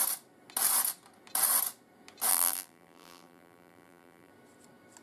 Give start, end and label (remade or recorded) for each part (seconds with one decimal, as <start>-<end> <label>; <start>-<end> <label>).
0.0-2.3 recorded; 2.3-4.3 remade; 4.3-5.0 recorded